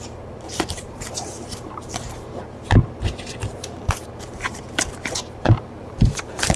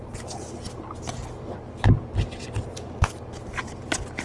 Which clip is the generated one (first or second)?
first